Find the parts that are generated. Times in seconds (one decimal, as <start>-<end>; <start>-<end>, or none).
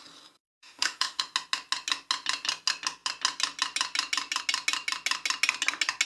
0.4-1.2